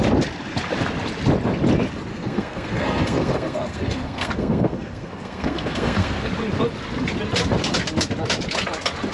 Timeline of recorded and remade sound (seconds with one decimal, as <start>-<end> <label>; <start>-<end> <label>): 0.0-2.1 recorded; 2.1-6.3 remade; 6.3-9.1 recorded